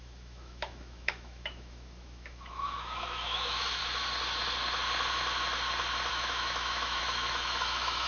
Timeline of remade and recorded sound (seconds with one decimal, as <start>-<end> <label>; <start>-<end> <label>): 0.0-3.8 remade; 3.8-6.1 recorded; 6.1-8.1 remade